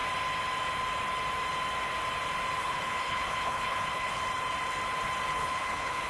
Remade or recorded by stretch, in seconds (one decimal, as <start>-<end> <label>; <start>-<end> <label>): 0.0-2.6 recorded; 2.6-4.2 remade; 4.2-5.3 recorded; 5.3-6.1 remade